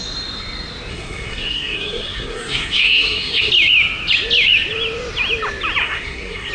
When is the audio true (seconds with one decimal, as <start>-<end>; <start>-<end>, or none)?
0.0-0.9; 3.5-5.8